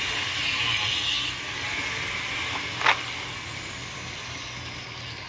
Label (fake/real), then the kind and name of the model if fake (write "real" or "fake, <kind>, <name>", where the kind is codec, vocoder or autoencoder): real